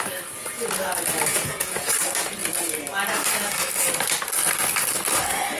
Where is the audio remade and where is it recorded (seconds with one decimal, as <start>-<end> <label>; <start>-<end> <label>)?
0.0-1.3 recorded; 1.3-1.9 remade; 1.9-5.6 recorded